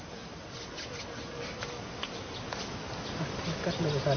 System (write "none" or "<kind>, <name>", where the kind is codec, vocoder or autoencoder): none